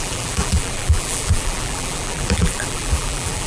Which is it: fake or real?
fake